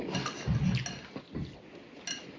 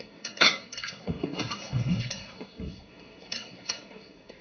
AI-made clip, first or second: second